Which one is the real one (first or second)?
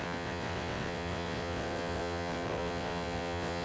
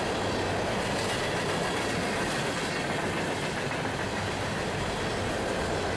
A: second